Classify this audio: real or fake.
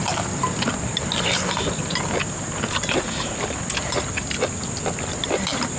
real